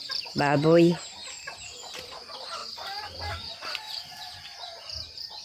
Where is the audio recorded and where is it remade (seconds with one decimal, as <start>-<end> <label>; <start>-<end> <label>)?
0.0-5.4 remade